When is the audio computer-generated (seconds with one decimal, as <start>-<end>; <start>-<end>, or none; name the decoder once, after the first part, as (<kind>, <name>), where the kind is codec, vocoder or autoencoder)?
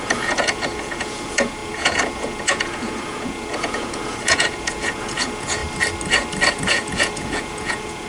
0.0-5.6 (vocoder, Vocos); 6.5-8.1